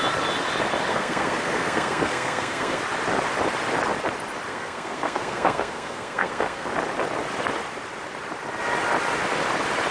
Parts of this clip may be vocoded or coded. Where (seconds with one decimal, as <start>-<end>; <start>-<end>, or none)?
0.9-2.8; 4.5-6.7